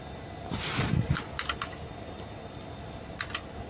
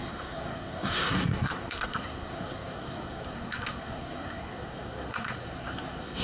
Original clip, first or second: first